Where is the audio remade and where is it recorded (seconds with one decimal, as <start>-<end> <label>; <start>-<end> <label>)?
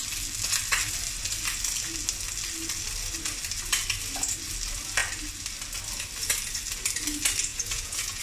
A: 0.0-7.5 recorded; 7.5-8.2 remade